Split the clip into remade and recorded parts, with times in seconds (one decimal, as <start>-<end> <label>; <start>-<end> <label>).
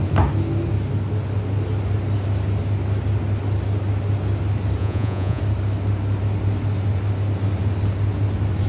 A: 0.0-4.8 recorded; 4.8-5.4 remade; 5.4-8.7 recorded